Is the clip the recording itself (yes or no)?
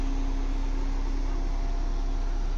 yes